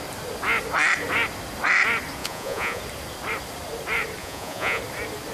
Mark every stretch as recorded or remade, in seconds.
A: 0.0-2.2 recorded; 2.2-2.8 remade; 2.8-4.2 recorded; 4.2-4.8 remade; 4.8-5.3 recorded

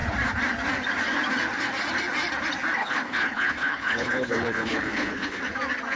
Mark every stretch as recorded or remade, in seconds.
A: 0.0-2.8 recorded; 2.8-5.4 remade; 5.4-6.0 recorded

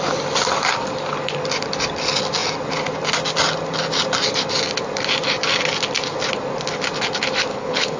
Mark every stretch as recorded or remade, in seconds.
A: 0.0-7.5 recorded; 7.5-8.0 remade

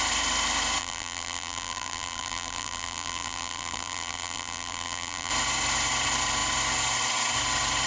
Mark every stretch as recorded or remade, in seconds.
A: 0.0-0.8 recorded; 0.8-5.3 remade; 5.3-7.9 recorded

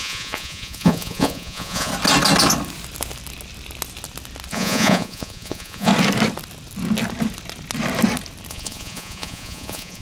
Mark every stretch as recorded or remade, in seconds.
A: 0.0-1.9 remade; 1.9-4.5 recorded; 4.5-5.9 remade; 5.9-8.5 recorded; 8.5-10.0 remade

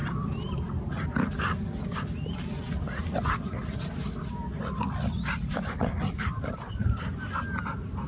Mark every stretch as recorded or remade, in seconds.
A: 0.0-8.1 recorded

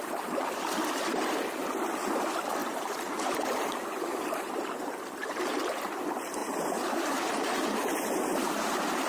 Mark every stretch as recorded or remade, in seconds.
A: 0.0-2.6 recorded; 2.6-5.4 remade; 5.4-6.4 recorded; 6.4-7.9 remade; 7.9-8.3 recorded; 8.3-9.1 remade